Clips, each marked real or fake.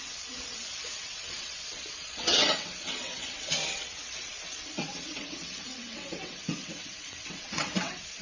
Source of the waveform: fake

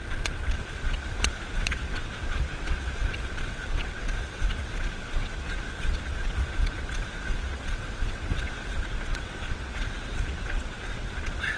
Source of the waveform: fake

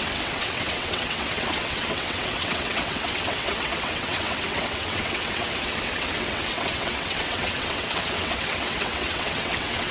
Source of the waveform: fake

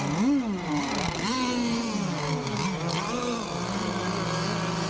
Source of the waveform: real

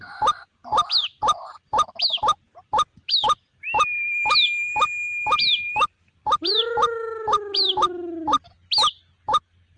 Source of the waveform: real